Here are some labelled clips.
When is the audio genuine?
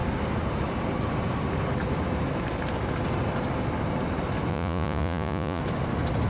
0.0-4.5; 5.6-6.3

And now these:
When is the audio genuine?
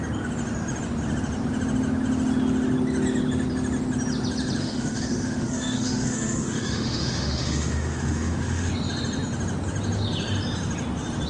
0.0-4.6; 8.7-11.3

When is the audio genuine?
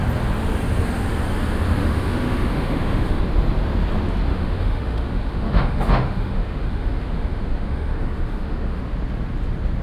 0.0-1.8; 3.2-4.3; 8.8-9.8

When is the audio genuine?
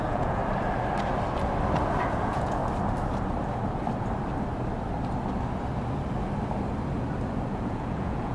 0.4-2.1; 2.6-7.5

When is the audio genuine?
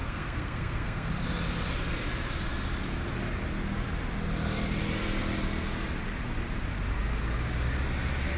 1.1-8.4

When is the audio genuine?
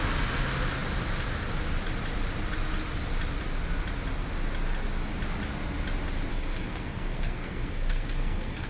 0.0-6.3